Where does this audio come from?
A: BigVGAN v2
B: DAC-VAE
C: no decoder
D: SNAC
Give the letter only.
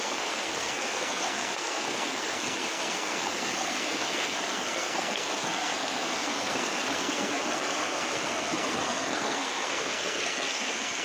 D